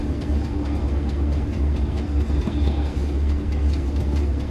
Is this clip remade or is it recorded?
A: remade